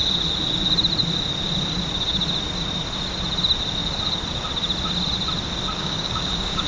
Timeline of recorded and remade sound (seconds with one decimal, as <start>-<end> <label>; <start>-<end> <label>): 0.0-5.8 recorded; 5.8-6.7 remade